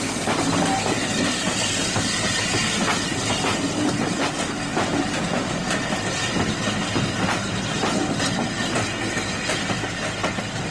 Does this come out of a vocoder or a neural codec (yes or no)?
no